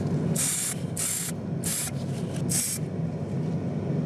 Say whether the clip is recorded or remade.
recorded